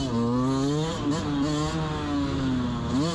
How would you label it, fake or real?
real